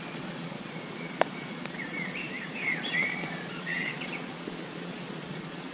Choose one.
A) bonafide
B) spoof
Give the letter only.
B